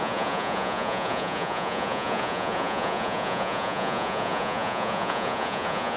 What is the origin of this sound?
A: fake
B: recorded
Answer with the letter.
A